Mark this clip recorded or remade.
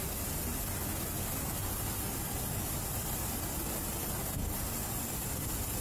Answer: recorded